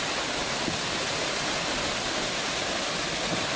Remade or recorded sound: recorded